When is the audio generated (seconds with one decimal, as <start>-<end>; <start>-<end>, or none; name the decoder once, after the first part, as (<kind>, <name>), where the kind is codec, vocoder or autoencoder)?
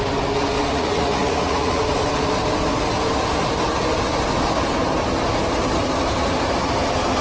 0.7-1.8 (vocoder, Vocos)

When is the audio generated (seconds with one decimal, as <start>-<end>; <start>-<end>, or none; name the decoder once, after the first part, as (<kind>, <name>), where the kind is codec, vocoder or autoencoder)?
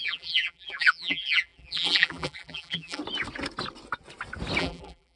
0.0-3.0 (vocoder, BigVGAN v2); 4.6-5.2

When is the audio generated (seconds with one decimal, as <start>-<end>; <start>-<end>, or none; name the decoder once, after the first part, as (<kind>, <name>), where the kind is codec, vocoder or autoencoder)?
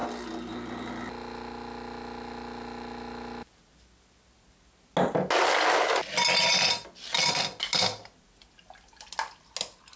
none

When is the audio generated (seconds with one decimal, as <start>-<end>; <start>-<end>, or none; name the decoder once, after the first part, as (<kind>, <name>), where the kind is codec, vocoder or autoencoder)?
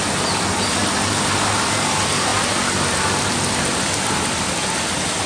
none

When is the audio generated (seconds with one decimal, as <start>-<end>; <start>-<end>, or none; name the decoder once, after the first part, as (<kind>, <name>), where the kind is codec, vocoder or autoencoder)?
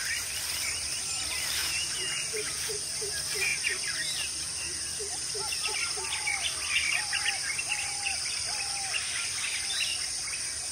1.6-2.8 (vocoder, Vocos)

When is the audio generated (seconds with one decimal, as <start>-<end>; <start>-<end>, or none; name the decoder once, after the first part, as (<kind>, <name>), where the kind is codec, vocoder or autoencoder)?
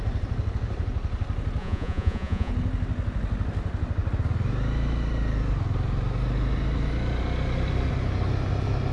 1.6-2.5 (vocoder, Vocos)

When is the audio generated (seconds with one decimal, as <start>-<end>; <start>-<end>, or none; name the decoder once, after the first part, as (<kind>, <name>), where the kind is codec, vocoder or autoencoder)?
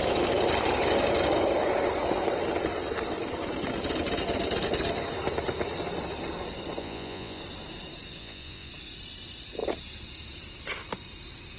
6.8-7.4 (vocoder, Vocos); 8.2-8.7